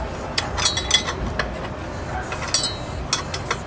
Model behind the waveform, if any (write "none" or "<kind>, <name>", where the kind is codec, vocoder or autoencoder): none